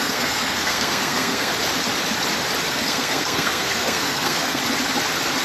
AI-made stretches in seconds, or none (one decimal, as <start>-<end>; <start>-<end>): 0.0-1.5; 2.7-4.6